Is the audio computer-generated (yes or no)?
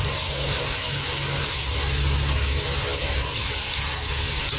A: no